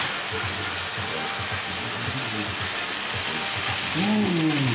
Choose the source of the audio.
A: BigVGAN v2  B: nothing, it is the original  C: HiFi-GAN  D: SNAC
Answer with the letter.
B